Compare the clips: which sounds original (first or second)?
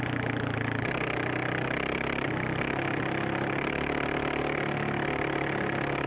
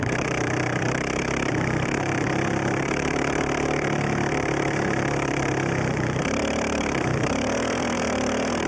first